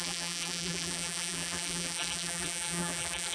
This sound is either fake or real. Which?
fake